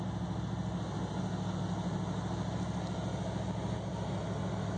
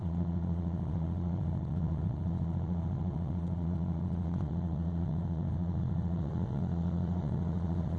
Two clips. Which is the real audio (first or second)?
first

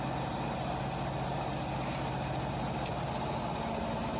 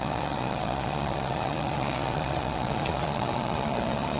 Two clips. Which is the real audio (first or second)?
first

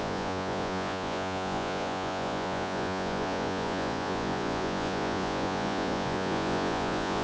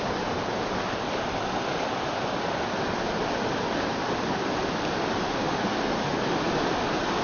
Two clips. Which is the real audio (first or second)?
second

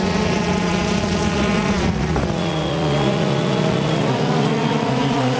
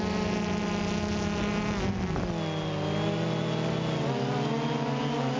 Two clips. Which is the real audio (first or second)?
second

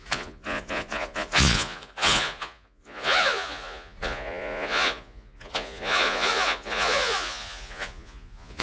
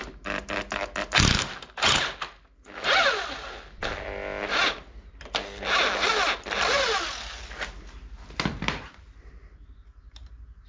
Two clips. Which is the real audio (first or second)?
second